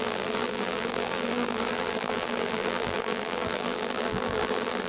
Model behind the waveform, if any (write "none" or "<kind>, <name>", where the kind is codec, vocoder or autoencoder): vocoder, BigVGAN v2